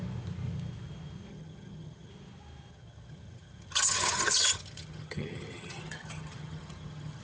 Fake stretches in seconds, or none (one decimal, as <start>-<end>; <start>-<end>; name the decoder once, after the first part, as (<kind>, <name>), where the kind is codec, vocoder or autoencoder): 1.3-2.1 (vocoder, HiFi-GAN); 2.7-7.2

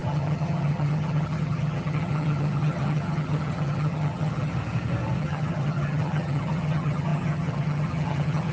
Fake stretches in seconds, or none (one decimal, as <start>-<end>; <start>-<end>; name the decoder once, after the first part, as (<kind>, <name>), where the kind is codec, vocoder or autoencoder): 0.0-4.5 (vocoder, HiFi-GAN); 5.2-8.5

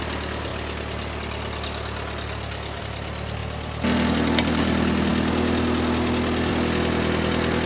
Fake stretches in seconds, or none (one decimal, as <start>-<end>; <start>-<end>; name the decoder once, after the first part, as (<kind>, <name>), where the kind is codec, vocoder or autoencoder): none

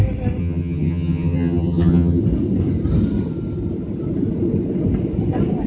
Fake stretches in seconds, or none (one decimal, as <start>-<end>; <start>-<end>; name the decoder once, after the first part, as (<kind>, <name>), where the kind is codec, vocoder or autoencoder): 0.4-2.2 (vocoder, HiFi-GAN)

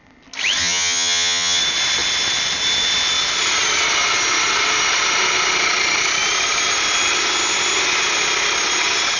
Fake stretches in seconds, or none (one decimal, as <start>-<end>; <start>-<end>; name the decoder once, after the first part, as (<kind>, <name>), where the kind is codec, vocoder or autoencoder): 0.6-1.6 (vocoder, HiFi-GAN)

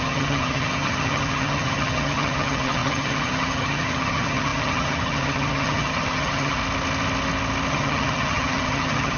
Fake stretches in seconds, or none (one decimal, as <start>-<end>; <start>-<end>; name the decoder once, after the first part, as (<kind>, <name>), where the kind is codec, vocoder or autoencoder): 0.0-6.6 (vocoder, HiFi-GAN); 7.7-9.2

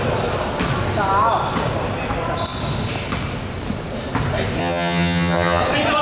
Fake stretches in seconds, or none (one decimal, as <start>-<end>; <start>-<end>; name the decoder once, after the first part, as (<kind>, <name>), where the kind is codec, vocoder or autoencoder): 4.6-5.6 (vocoder, HiFi-GAN)

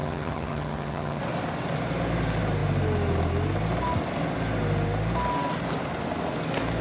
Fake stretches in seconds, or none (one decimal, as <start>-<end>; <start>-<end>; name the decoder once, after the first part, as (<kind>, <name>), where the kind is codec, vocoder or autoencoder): 0.0-1.2 (vocoder, HiFi-GAN)